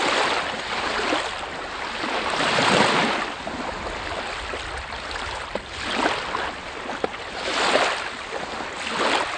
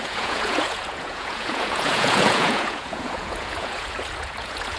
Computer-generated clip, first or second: second